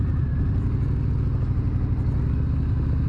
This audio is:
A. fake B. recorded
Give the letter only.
B